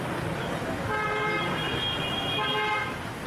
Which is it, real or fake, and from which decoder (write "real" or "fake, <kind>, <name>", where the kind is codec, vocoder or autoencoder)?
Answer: real